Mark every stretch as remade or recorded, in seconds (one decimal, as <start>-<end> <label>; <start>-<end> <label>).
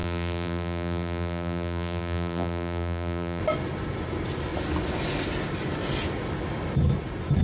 0.0-3.4 remade; 3.4-7.4 recorded